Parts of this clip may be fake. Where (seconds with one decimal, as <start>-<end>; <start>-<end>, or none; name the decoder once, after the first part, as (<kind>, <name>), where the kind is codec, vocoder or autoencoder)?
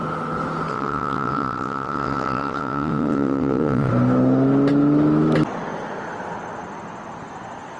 0.7-3.9 (vocoder, WaveNeXt)